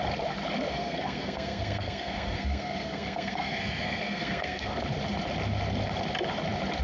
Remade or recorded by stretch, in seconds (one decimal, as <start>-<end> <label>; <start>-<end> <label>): 0.0-0.7 recorded; 0.7-4.8 remade; 4.8-6.8 recorded